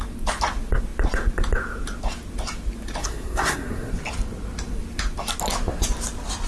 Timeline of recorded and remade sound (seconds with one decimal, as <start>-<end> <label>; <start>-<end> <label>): 0.0-3.0 recorded; 3.0-3.9 remade; 3.9-6.5 recorded